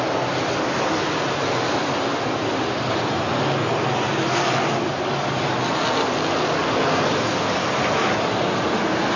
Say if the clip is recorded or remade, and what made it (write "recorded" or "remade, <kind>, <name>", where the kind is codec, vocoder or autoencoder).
recorded